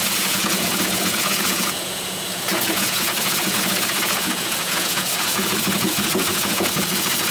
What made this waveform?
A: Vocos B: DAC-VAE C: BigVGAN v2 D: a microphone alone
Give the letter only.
A